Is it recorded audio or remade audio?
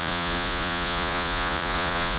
remade